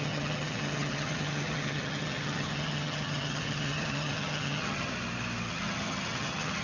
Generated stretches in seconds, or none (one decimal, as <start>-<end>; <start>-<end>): 0.0-4.9; 5.5-6.6